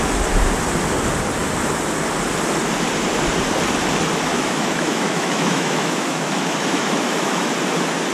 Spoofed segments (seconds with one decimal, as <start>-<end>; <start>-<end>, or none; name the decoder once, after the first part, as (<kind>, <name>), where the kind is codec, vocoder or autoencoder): 4.3-7.5 (autoencoder, DAC-VAE)